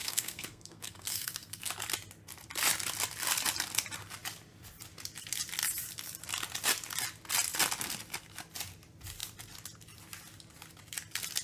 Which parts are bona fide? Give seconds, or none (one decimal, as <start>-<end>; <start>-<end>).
1.7-11.4